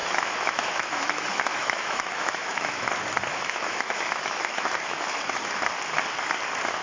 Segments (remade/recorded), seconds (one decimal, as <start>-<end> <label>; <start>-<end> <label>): 0.0-2.9 remade; 2.9-3.3 recorded; 3.3-5.4 remade; 5.4-6.8 recorded